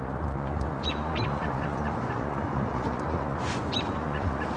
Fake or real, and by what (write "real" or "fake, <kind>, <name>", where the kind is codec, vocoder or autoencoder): fake, vocoder, Vocos